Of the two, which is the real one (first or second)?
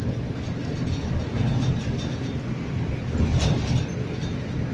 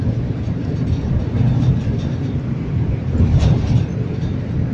first